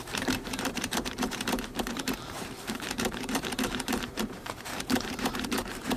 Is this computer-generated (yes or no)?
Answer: yes